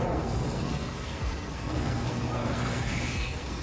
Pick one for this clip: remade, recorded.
remade